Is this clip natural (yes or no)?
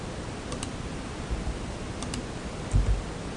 yes